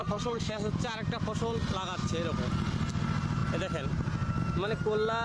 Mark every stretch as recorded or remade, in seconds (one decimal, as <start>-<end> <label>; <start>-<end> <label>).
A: 0.0-0.6 remade; 0.6-5.2 recorded